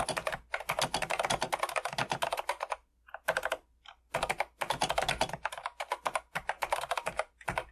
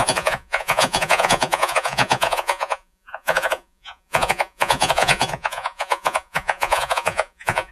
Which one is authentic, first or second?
first